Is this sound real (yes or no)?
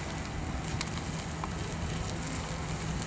yes